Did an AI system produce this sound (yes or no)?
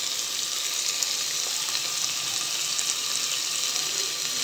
no